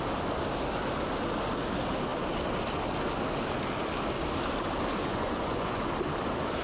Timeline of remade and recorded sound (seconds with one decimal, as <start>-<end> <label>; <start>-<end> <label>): 0.0-5.0 recorded; 5.0-5.8 remade; 5.8-6.6 recorded